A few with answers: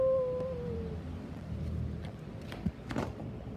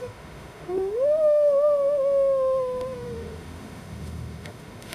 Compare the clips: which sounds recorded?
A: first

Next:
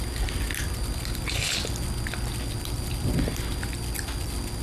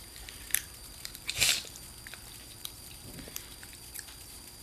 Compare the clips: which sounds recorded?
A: first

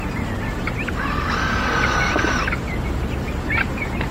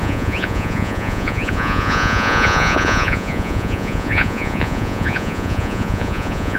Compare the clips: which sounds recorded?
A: first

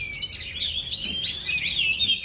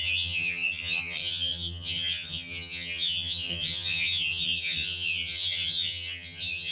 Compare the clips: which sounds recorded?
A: first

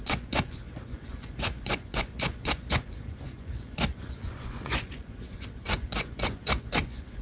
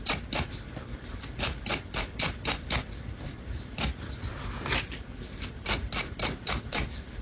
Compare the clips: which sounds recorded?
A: second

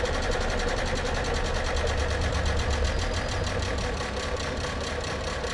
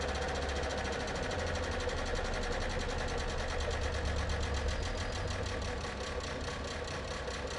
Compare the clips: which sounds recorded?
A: second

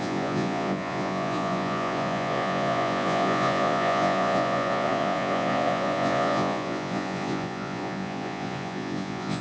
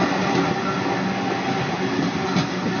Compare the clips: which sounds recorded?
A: second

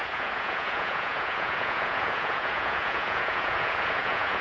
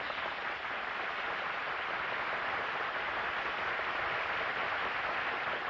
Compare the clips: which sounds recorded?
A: second